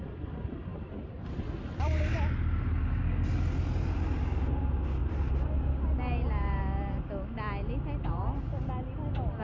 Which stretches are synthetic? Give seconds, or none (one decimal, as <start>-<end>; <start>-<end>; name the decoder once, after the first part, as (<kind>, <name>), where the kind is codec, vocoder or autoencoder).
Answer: 0.7-1.4 (vocoder, BigVGAN v2); 5.0-6.6